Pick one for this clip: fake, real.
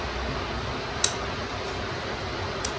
real